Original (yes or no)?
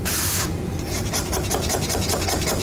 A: no